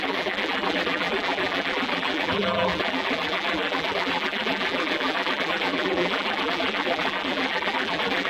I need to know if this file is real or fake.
fake